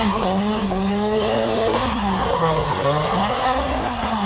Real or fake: fake